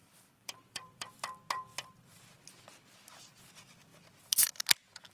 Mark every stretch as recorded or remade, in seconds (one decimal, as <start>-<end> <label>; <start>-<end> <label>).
0.0-1.1 remade; 1.1-3.9 recorded; 3.9-4.6 remade; 4.6-5.1 recorded